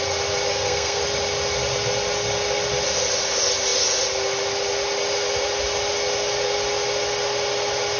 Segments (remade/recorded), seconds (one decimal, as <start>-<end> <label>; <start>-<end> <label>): 0.0-0.5 recorded; 0.5-1.0 remade; 1.0-8.0 recorded